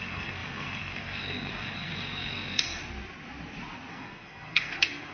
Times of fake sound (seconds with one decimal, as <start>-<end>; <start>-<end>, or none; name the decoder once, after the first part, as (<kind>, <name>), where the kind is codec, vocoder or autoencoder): 0.0-2.8 (codec, SNAC); 3.9-5.1